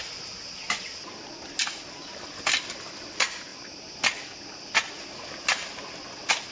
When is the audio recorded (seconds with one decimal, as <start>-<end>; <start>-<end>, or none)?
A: 0.0-6.5

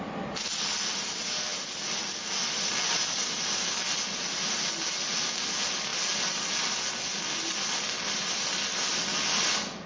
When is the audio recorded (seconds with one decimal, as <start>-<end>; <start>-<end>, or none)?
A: 0.0-9.9